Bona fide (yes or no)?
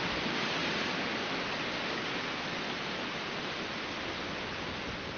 yes